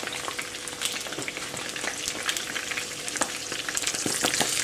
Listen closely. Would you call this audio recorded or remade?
recorded